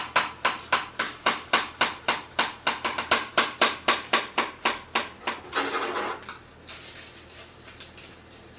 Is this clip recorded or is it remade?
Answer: recorded